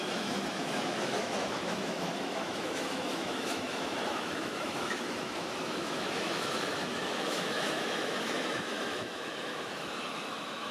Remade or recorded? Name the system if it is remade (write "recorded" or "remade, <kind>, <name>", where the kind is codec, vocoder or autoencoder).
remade, autoencoder, DAC-VAE